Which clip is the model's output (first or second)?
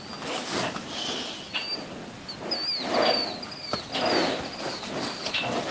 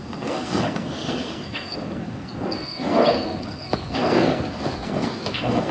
second